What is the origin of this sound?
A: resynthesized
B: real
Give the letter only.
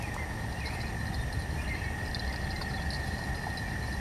B